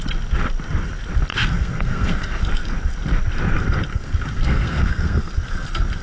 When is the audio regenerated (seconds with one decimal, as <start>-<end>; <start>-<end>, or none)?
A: 1.3-2.4; 3.9-5.3